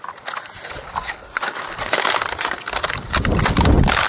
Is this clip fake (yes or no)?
no